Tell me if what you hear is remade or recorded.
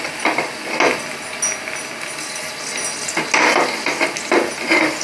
recorded